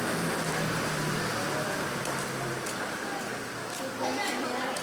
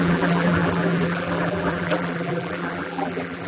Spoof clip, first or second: second